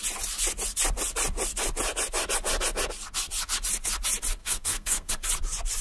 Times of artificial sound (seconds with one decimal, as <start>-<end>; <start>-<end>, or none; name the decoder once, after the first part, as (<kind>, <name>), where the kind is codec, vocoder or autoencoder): 4.4-5.1 (codec, SNAC)